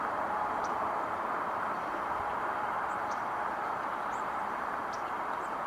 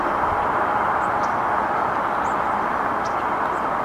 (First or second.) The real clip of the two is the second